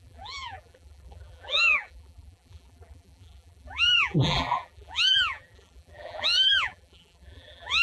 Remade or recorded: remade